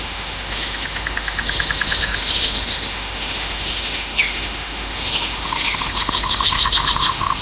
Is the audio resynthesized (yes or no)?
yes